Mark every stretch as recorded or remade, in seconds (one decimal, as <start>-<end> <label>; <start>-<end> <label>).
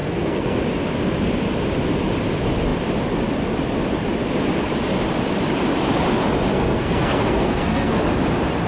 0.0-0.6 remade; 0.6-6.5 recorded; 6.5-8.0 remade; 8.0-8.7 recorded